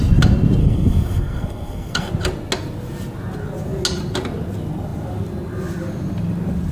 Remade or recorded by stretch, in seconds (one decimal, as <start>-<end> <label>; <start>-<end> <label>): 0.0-0.6 recorded; 0.6-2.1 remade; 2.1-6.7 recorded